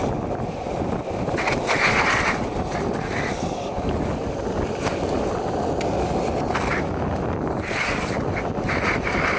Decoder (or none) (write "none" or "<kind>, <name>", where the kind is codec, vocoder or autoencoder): none